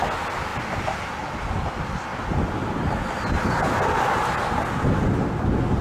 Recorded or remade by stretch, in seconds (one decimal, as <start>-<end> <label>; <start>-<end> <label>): 0.0-5.8 recorded